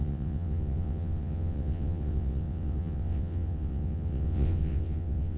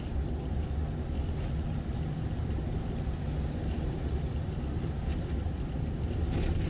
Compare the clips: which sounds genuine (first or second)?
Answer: second